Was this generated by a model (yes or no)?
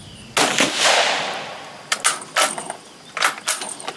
no